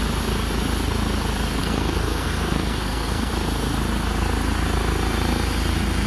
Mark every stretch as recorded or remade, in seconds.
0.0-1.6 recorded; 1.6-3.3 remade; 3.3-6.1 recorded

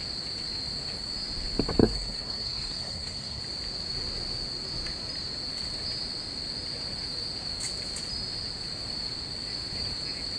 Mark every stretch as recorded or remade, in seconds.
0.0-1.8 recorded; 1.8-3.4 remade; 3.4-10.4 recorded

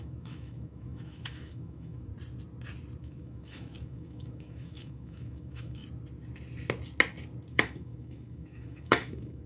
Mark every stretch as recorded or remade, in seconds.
0.0-2.1 remade; 2.1-3.0 recorded; 3.0-5.8 remade; 5.8-7.5 recorded; 7.5-9.5 remade

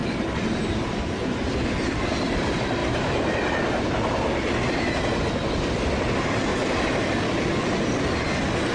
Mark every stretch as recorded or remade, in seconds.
0.0-8.7 recorded

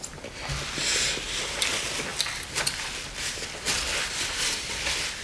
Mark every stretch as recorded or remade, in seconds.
0.0-5.2 recorded